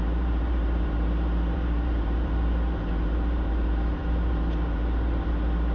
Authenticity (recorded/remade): remade